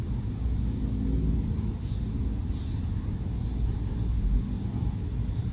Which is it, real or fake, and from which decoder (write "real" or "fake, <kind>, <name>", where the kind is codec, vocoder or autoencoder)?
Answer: real